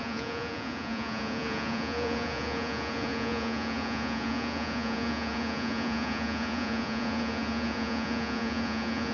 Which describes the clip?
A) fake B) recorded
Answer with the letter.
A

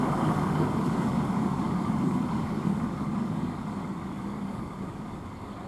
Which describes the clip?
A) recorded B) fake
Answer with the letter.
B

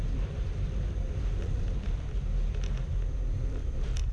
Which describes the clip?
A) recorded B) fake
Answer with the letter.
B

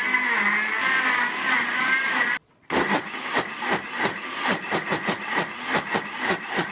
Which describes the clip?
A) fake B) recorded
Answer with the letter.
B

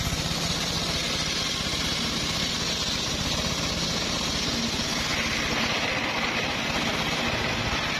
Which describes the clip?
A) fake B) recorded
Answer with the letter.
B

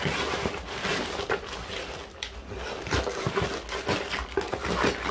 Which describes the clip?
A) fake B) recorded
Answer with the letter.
B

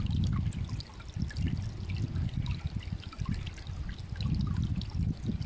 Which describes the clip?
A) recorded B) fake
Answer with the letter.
A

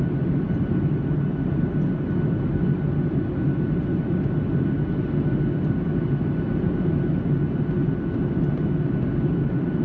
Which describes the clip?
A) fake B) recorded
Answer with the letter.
B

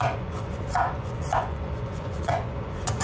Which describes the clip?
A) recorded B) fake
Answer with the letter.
B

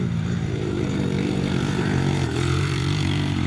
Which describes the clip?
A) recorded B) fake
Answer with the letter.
B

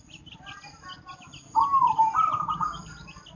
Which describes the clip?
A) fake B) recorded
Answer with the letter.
B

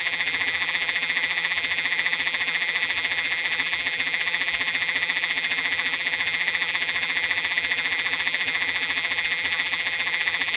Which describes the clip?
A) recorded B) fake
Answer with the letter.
B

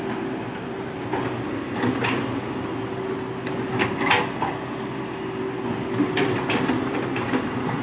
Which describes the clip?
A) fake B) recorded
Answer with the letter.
B